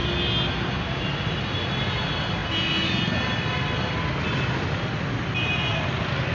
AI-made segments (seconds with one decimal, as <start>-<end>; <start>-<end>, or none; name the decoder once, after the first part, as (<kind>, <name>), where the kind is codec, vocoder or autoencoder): none